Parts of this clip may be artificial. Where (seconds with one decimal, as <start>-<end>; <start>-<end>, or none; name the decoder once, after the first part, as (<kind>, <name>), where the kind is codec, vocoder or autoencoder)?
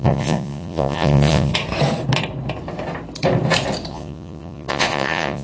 0.0-1.5 (vocoder, Vocos); 3.9-5.4